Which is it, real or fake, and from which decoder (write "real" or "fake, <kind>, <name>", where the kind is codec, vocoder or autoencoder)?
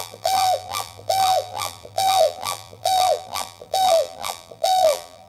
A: fake, vocoder, BigVGAN v2